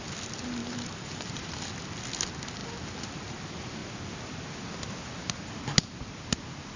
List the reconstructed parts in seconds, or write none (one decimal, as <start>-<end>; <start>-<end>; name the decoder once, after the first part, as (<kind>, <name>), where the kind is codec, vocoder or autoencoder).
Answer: 0.6-1.5 (vocoder, BigVGAN v2)